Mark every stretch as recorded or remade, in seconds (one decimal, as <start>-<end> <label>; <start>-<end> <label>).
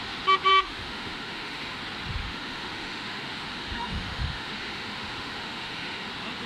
0.0-0.5 recorded; 0.5-1.8 remade; 1.8-2.2 recorded; 2.2-6.1 remade; 6.1-6.5 recorded